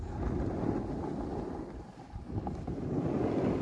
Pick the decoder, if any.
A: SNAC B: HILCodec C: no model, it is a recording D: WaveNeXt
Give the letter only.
C